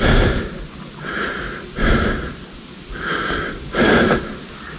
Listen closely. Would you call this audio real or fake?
real